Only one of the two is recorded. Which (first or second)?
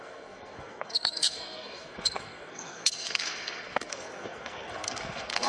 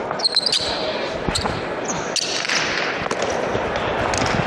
second